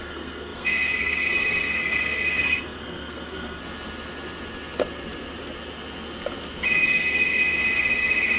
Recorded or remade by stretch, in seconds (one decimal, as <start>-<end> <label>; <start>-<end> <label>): 0.0-3.6 remade; 3.6-6.7 recorded; 6.7-8.4 remade